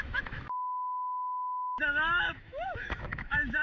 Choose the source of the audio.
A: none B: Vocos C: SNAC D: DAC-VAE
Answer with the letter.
D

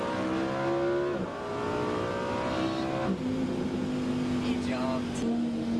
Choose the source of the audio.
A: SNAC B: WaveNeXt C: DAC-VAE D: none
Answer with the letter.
D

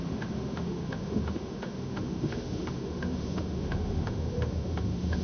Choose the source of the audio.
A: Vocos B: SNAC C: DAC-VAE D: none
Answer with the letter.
C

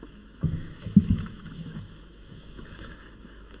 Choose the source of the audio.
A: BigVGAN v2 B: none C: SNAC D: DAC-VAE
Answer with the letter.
D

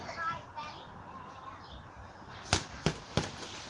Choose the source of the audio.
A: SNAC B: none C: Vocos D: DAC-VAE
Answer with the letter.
B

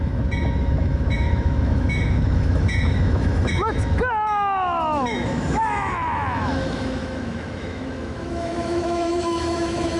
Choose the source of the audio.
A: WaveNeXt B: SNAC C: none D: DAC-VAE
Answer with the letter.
D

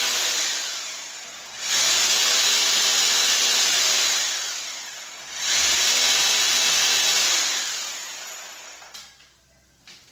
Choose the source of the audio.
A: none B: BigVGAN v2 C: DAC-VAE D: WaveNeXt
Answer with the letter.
A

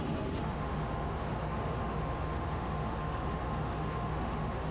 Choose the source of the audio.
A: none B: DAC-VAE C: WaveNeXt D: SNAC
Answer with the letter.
B